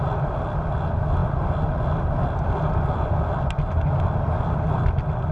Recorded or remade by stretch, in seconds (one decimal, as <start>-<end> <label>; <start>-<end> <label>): 0.0-5.3 recorded